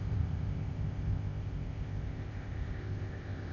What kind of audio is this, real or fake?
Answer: fake